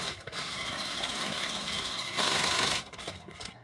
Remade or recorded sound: remade